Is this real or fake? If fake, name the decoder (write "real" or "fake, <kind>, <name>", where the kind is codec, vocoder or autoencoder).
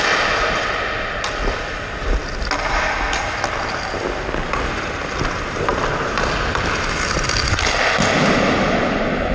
real